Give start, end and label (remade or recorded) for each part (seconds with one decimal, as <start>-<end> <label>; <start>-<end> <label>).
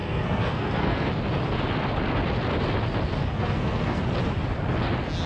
0.0-1.1 remade; 1.1-3.3 recorded; 3.3-4.0 remade; 4.0-5.3 recorded